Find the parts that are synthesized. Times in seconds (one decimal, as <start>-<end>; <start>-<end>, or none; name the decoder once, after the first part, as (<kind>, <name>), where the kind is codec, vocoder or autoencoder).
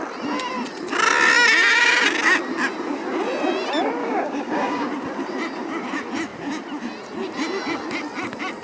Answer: 4.0-4.9 (codec, DAC)